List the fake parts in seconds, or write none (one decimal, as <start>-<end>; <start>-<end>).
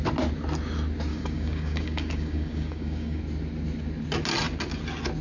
1.1-3.2